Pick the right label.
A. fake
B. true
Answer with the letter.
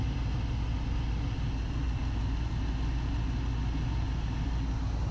B